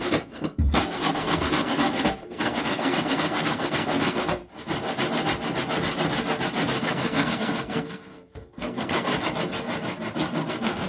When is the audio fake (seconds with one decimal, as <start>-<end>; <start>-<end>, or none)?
0.0-4.4; 6.8-9.1; 10.5-10.9